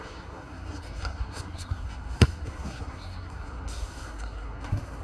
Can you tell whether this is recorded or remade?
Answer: remade